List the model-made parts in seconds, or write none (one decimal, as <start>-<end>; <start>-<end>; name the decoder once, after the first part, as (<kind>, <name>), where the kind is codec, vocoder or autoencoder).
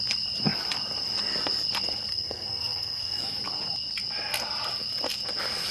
2.1-3.2 (codec, SNAC)